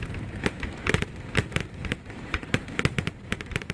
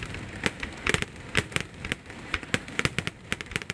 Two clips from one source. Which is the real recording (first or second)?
second